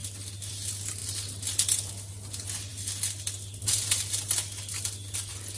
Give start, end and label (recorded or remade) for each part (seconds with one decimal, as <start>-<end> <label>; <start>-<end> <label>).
0.0-5.6 recorded